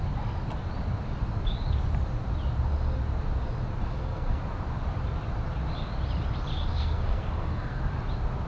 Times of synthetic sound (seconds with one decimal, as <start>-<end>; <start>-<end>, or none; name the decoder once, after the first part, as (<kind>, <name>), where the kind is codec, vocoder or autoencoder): 3.8-4.4 (codec, SNAC); 6.7-7.8